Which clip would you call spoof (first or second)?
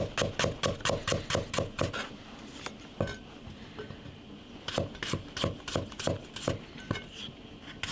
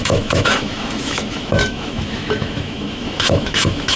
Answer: second